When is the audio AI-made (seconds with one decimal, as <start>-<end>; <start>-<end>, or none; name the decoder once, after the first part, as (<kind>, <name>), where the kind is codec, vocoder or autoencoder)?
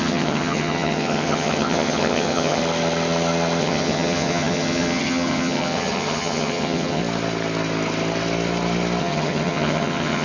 0.0-2.6 (vocoder, HiFi-GAN); 3.6-7.0; 9.0-10.2